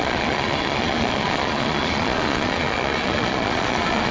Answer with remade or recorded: remade